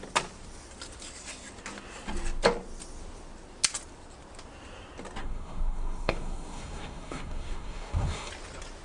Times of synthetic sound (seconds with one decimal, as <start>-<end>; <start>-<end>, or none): 5.2-8.3